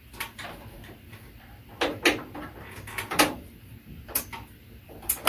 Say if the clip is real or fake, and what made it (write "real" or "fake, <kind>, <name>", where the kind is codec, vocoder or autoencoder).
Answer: real